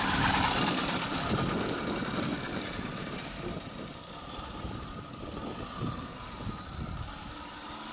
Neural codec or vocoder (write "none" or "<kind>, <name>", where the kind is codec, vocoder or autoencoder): none